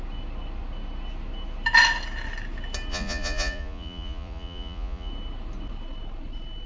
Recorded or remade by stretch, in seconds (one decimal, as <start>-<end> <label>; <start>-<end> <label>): 0.0-2.9 recorded; 2.9-5.1 remade; 5.1-6.7 recorded